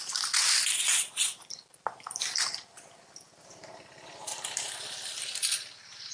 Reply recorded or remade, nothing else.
recorded